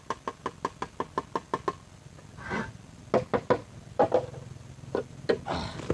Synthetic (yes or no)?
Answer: no